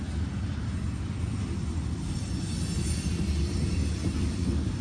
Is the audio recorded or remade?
recorded